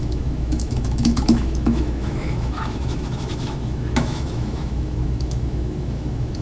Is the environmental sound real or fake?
fake